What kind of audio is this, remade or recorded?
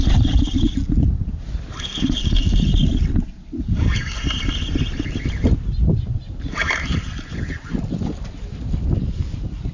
recorded